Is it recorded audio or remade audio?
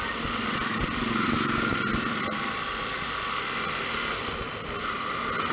recorded